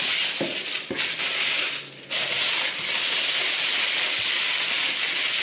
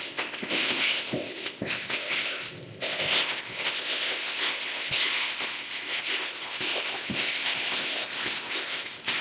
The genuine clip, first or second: first